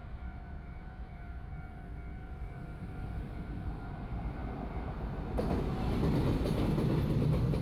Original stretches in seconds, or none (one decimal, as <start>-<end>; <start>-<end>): 1.5-7.6